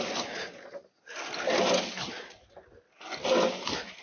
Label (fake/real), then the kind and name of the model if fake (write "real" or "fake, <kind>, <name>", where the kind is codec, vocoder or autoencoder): real